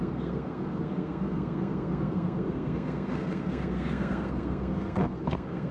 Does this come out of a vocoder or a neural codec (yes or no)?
yes